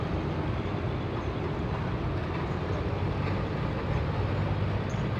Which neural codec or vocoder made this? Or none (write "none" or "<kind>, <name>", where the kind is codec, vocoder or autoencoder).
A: none